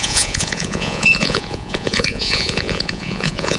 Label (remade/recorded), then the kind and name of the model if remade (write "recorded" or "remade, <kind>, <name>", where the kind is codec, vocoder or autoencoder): remade, vocoder, Vocos